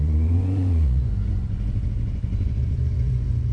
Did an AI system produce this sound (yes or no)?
yes